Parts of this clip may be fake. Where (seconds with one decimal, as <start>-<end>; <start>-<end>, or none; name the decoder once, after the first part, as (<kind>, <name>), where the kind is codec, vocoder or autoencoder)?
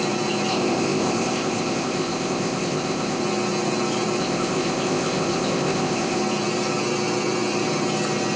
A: 0.5-3.2 (codec, ZipCodec); 4.2-6.2